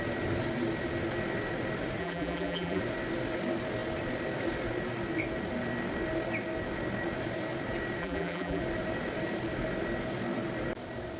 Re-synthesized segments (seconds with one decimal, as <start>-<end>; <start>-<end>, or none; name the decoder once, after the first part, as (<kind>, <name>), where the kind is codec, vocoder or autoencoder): 2.0-2.8 (vocoder, BigVGAN v2); 8.0-8.6